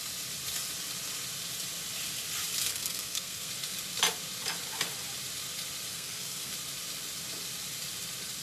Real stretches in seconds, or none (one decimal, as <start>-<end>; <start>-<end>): 0.0-2.7; 3.5-5.9; 6.5-8.4